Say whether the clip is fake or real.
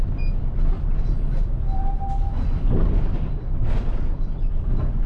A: real